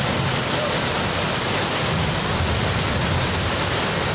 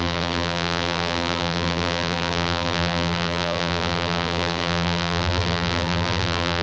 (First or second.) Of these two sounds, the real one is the first